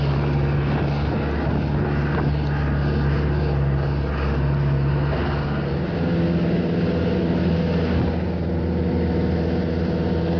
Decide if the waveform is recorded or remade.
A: recorded